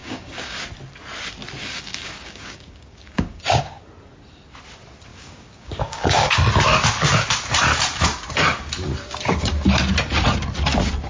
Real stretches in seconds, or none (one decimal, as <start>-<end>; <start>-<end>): 0.6-1.6; 3.8-5.1; 6.3-11.1